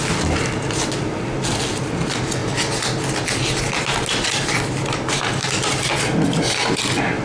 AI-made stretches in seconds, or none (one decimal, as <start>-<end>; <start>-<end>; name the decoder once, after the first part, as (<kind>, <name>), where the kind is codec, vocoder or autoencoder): none